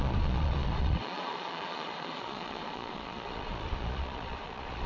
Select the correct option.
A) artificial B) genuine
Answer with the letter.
A